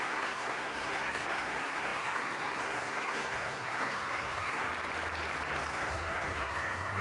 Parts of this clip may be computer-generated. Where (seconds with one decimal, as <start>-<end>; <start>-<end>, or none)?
0.0-4.7; 5.7-7.0